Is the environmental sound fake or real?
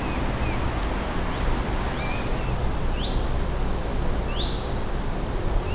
real